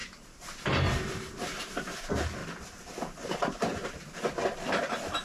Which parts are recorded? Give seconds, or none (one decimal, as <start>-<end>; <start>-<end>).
2.0-2.4; 4.2-5.2